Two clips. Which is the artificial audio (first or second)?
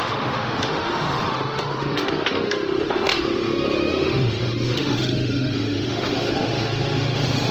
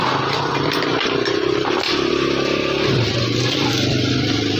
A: first